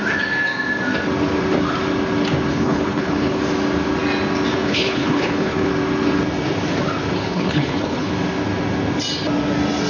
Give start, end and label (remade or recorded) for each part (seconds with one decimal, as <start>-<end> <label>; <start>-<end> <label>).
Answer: 0.0-2.5 recorded; 2.5-3.4 remade; 3.4-4.5 recorded; 4.5-5.7 remade; 5.7-7.2 recorded; 7.2-8.1 remade; 8.1-9.9 recorded